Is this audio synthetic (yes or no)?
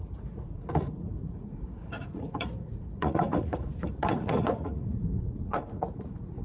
yes